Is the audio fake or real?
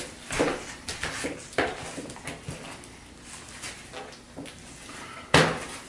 real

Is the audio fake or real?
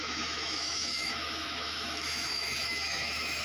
fake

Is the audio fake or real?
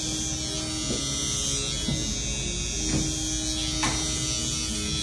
real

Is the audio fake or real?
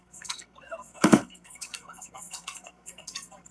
fake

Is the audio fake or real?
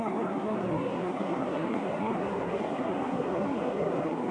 fake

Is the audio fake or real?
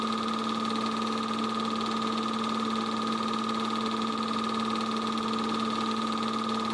real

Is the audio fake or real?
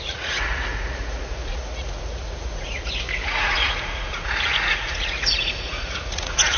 fake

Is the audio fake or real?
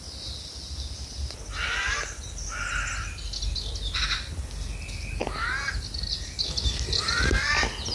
real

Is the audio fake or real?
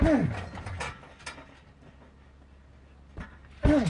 real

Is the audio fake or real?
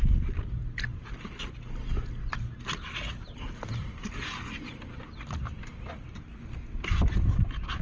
real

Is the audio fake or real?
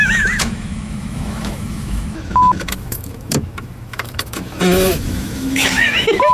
fake